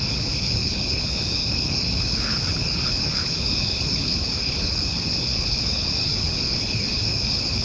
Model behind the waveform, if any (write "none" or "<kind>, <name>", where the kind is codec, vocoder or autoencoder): codec, HILCodec